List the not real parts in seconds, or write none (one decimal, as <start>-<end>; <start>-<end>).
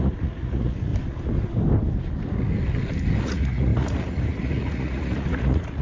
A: 0.0-0.9; 3.2-5.8